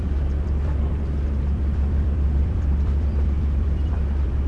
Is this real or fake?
fake